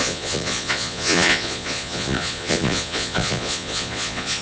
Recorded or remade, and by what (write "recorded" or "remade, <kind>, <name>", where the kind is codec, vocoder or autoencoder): remade, vocoder, Vocos